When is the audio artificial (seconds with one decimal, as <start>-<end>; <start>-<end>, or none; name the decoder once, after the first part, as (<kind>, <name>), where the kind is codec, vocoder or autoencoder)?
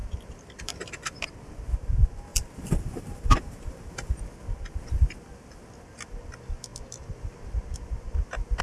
2.3-4.2 (vocoder, BigVGAN v2)